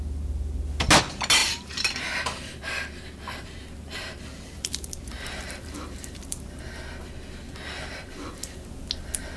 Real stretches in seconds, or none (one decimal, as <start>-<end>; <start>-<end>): 0.0-1.4; 6.6-9.4